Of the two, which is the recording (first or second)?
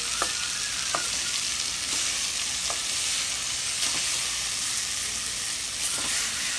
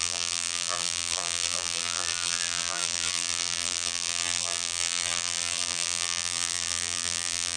first